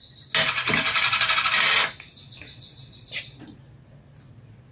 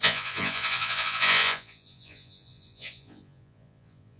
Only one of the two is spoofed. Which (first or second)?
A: second